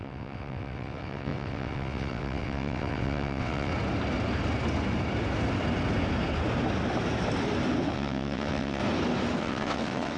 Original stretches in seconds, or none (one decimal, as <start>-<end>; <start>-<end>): 3.7-7.9; 8.8-9.4